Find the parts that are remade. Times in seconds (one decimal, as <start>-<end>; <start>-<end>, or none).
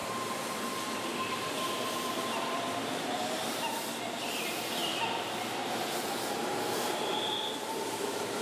0.0-4.2; 4.8-5.6